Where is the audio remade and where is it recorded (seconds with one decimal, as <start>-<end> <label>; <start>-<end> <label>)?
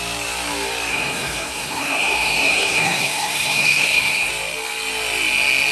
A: 0.0-0.9 recorded; 0.9-4.3 remade; 4.3-5.7 recorded